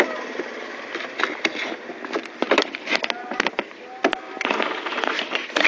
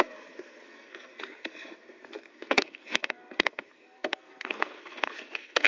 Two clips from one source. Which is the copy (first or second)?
second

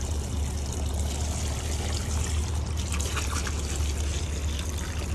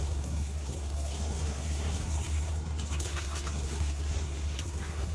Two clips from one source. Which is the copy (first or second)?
second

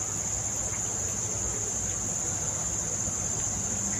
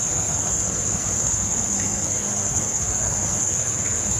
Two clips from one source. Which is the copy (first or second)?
second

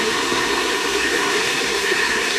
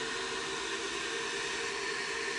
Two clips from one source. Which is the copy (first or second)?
first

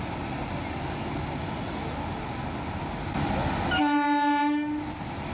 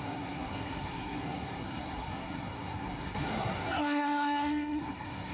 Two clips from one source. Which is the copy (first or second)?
second